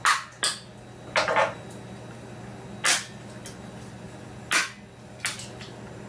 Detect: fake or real real